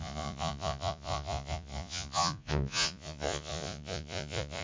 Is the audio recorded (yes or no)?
no